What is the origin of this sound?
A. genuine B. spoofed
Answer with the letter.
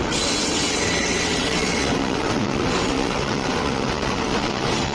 B